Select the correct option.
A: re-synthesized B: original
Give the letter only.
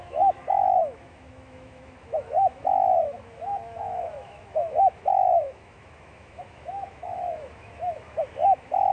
A